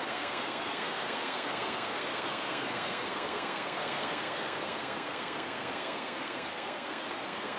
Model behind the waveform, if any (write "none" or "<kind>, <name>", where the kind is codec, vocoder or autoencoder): codec, SNAC